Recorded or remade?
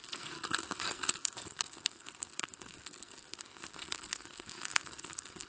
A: remade